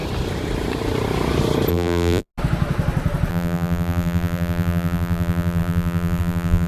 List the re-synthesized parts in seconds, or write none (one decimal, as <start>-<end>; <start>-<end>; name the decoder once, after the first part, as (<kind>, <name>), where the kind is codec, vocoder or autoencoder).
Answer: 1.7-2.3 (vocoder, BigVGAN v2); 3.3-6.7

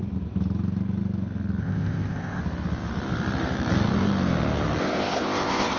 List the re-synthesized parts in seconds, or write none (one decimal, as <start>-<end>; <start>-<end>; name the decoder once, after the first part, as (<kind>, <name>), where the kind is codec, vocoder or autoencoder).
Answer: 1.6-2.4 (codec, ZipCodec); 4.8-5.8

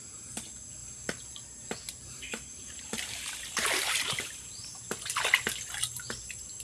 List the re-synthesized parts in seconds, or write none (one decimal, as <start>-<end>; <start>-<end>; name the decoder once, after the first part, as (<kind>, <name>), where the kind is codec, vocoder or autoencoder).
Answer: 0.8-4.8 (vocoder, BigVGAN v2)

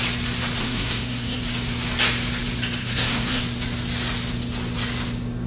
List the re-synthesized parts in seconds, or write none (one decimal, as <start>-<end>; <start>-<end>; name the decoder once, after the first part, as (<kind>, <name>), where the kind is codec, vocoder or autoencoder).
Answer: 0.6-1.4 (codec, SNAC); 2.8-3.4

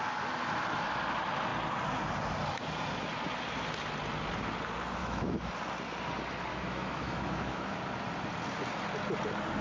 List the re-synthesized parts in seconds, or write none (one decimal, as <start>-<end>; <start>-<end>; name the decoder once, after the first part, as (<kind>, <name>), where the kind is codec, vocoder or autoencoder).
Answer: 5.0-5.5 (autoencoder, DAC-VAE); 6.5-7.8